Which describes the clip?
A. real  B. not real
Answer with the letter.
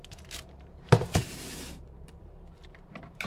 B